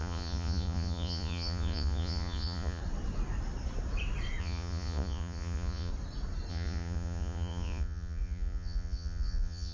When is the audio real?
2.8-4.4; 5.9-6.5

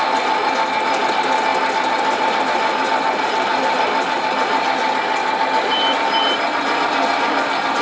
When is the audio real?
0.0-7.8

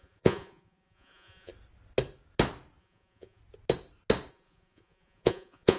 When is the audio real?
1.5-2.8; 3.4-4.3

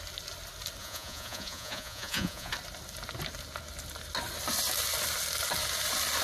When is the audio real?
0.0-0.8; 2.5-6.2

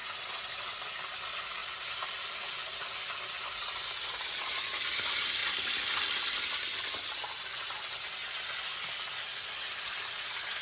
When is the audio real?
0.0-0.9; 8.2-9.8

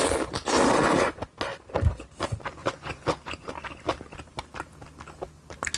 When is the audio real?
0.0-2.6; 3.5-5.8